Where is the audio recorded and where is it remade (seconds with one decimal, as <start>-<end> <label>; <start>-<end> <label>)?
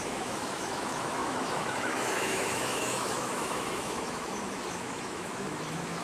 0.0-6.0 remade